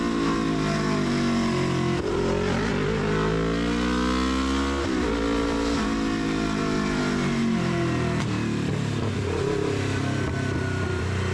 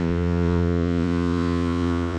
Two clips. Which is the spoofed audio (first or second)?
second